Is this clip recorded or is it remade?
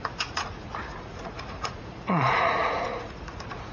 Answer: remade